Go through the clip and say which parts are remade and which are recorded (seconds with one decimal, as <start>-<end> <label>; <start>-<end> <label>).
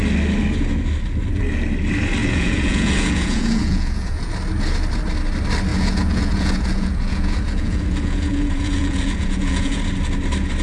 0.0-2.2 recorded; 2.2-4.3 remade; 4.3-5.7 recorded; 5.7-9.8 remade; 9.8-10.6 recorded